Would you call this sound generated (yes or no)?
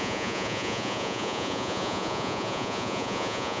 yes